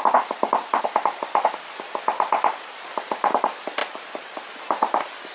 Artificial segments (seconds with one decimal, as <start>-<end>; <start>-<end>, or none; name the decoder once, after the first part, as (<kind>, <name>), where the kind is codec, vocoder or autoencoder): none